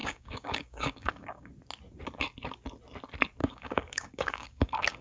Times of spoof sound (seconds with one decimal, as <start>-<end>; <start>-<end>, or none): 0.0-1.5; 3.4-5.0